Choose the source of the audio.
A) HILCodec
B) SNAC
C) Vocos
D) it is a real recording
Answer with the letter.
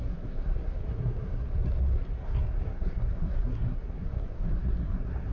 B